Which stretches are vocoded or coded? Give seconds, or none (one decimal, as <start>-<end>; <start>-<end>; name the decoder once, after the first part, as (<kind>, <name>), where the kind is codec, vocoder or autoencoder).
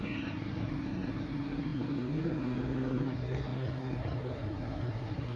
0.0-5.4 (codec, SNAC)